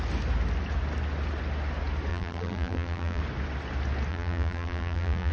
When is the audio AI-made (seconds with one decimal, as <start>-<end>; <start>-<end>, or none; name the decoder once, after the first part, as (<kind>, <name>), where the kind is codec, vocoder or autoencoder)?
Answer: 2.1-3.2 (vocoder, BigVGAN v2); 4.1-5.3